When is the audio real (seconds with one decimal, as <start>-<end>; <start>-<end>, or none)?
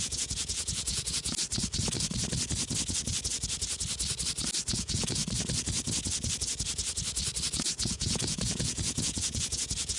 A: 1.3-4.7; 5.2-7.5